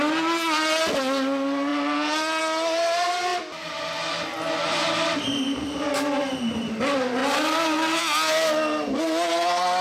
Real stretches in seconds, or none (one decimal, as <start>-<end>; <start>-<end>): 0.0-9.8